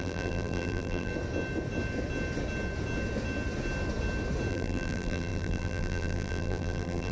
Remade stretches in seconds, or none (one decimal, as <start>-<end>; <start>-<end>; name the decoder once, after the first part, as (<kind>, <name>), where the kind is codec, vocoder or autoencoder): 0.0-1.1 (vocoder, BigVGAN v2); 4.5-7.1